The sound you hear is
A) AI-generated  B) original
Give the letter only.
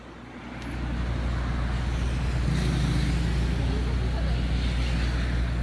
B